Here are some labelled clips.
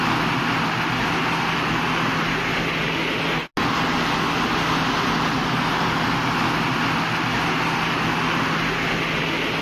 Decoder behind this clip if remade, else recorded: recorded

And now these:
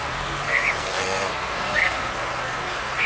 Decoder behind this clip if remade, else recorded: remade, codec, SNAC